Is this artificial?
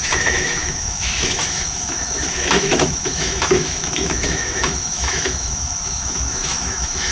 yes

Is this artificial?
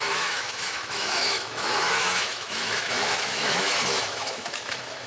yes